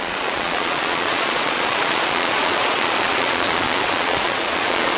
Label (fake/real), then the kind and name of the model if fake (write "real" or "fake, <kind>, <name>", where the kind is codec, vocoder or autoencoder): fake, vocoder, Vocos